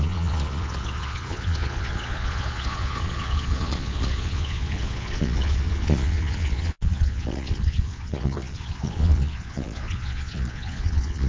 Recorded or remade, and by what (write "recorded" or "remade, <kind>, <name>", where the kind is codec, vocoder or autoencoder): remade, vocoder, Vocos